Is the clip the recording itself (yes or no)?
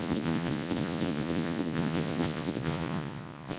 no